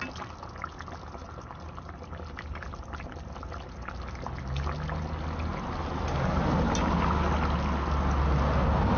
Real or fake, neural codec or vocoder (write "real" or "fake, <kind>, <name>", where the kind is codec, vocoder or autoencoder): real